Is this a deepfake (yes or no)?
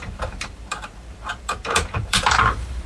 yes